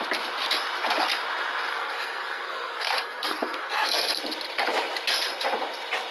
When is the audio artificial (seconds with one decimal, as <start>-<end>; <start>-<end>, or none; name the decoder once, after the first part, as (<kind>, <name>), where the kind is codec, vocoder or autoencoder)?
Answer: 1.7-4.2 (codec, SNAC)